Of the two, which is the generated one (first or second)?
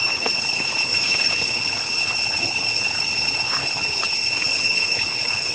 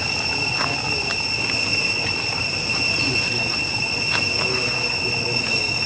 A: first